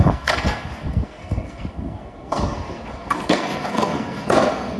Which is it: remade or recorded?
remade